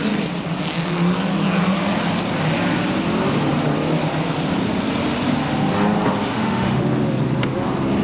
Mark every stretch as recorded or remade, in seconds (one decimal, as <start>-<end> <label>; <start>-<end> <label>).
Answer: 0.0-6.3 recorded; 6.3-6.8 remade; 6.8-8.0 recorded